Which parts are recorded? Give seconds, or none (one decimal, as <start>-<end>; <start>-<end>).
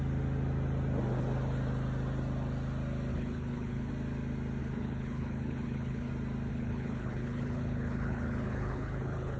0.0-3.1; 3.9-4.6; 6.1-6.5